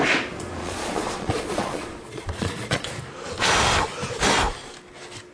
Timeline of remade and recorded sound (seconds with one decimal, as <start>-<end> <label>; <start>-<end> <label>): 0.0-0.6 recorded; 0.6-2.9 remade; 2.9-5.3 recorded